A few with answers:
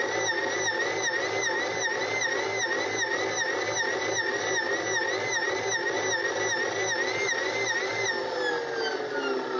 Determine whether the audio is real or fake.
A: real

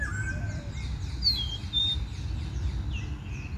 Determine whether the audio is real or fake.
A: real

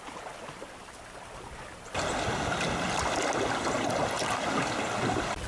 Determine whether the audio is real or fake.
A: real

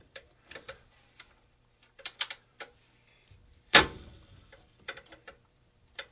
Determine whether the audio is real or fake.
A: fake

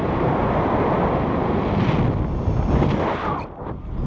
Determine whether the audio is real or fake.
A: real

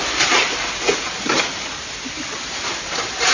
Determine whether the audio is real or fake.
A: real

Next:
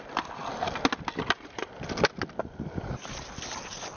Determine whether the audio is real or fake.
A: real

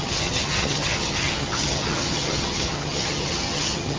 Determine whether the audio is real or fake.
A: fake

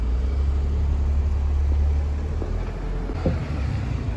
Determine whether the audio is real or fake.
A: real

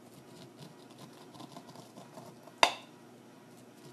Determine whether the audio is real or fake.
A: real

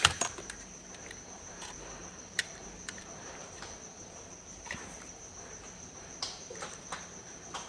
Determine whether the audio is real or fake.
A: fake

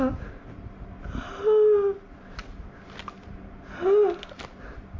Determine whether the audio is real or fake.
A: real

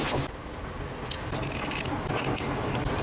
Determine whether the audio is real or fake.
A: real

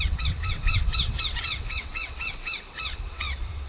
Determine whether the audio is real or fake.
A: fake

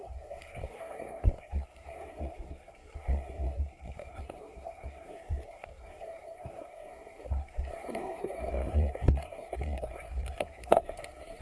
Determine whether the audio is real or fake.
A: fake